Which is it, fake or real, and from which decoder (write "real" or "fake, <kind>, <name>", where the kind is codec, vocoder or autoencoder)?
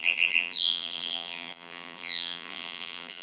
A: fake, vocoder, BigVGAN v2